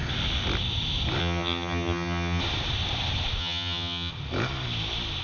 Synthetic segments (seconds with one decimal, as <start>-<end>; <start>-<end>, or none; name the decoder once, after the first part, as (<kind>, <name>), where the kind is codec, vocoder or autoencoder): 1.2-2.4 (vocoder, HiFi-GAN); 3.4-4.1